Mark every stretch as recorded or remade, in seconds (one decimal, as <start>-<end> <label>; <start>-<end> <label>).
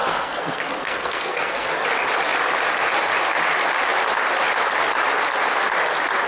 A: 0.0-1.7 remade; 1.7-6.3 recorded